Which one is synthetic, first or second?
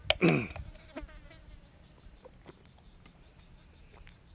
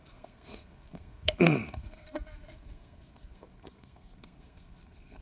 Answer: second